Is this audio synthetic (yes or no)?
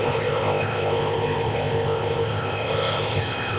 yes